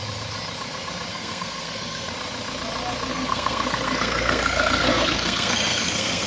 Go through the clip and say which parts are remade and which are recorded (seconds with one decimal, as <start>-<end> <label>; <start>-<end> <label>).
0.0-1.1 recorded; 1.1-2.1 remade; 2.1-3.1 recorded; 3.1-6.3 remade